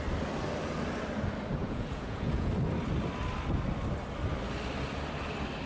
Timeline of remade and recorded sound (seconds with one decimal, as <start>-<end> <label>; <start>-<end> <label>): 0.0-1.6 recorded; 1.6-2.5 remade; 2.5-5.7 recorded

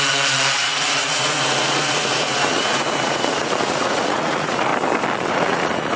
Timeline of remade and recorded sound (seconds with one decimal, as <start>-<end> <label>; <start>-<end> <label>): 0.0-4.7 remade; 4.7-5.3 recorded; 5.3-6.0 remade

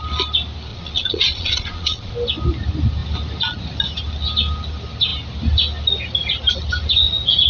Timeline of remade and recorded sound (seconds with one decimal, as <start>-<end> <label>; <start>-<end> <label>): 0.0-0.7 recorded; 0.7-2.1 remade; 2.1-7.5 recorded

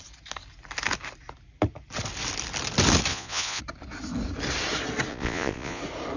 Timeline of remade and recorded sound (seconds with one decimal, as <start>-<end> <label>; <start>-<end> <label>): 0.0-3.1 recorded; 3.1-3.6 remade; 3.6-5.1 recorded; 5.1-5.8 remade; 5.8-6.2 recorded

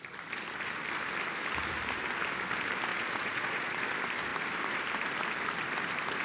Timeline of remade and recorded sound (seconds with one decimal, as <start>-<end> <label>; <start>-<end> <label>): 0.0-2.9 recorded; 2.9-3.8 remade; 3.8-6.2 recorded

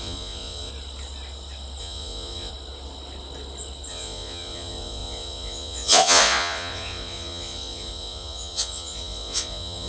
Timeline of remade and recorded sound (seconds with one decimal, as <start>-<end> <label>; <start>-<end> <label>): 0.0-0.7 remade; 0.7-1.8 recorded; 1.8-2.5 remade; 2.5-3.9 recorded; 3.9-9.9 remade

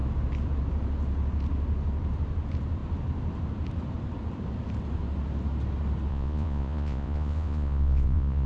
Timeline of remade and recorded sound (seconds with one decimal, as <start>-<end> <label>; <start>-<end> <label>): 0.0-6.1 recorded; 6.1-8.5 remade